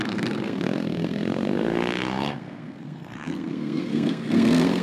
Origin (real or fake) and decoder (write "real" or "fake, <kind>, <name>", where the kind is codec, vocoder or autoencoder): fake, codec, SNAC